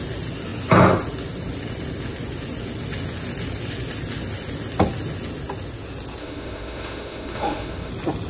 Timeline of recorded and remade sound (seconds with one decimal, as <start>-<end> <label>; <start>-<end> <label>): 0.0-6.2 recorded; 6.2-7.9 remade; 7.9-8.3 recorded